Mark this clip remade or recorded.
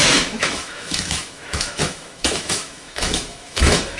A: remade